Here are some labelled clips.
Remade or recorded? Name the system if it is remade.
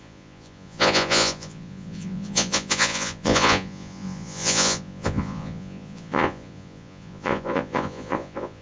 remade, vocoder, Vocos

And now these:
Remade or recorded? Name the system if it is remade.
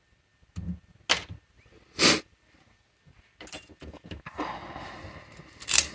recorded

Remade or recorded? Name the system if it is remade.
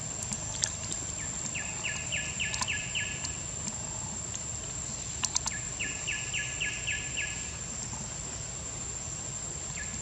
recorded